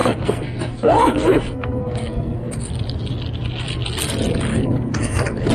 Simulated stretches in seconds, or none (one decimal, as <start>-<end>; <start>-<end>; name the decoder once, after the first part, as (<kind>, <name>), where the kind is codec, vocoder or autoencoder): 0.0-2.7 (codec, SNAC); 4.5-5.5